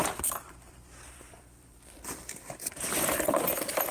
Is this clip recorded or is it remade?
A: remade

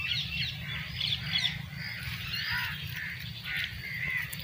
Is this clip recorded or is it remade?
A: recorded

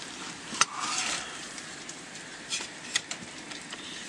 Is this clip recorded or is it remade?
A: remade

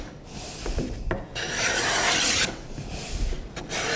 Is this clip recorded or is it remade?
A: recorded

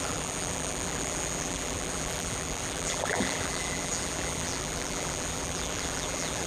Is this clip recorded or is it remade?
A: remade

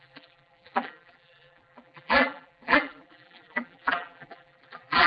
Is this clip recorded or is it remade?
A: remade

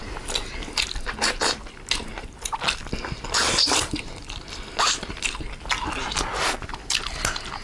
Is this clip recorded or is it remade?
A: recorded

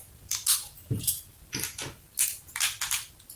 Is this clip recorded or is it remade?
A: recorded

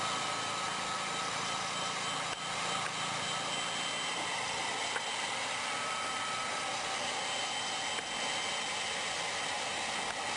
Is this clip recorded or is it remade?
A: recorded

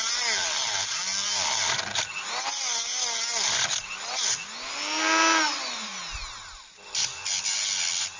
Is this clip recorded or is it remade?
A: recorded